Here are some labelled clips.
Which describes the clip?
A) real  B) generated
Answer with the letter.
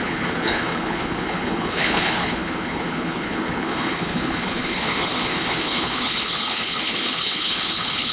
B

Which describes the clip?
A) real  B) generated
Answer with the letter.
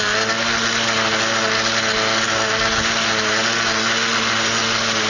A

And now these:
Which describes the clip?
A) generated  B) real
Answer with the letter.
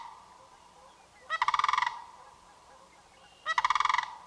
B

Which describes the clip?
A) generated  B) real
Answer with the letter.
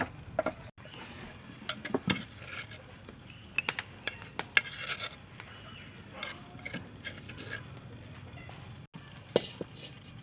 B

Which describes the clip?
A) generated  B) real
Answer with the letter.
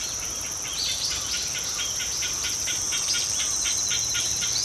B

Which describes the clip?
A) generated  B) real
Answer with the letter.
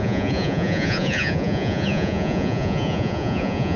A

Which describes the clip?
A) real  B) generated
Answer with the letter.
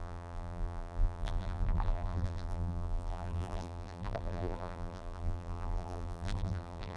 B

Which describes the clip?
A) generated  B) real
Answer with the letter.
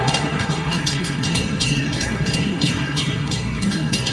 A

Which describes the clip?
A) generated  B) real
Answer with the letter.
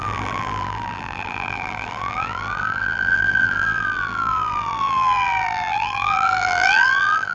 A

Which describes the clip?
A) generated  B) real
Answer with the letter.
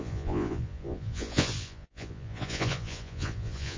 A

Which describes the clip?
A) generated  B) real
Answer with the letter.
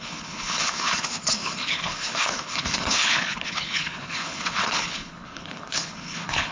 A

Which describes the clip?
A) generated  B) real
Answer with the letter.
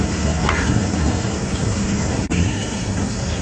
A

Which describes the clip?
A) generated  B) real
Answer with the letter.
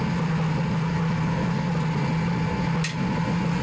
B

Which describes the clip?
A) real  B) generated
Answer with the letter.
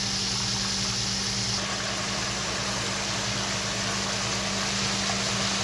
A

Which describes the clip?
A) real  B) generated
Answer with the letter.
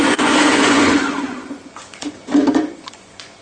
B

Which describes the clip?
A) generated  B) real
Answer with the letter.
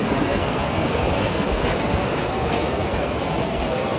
A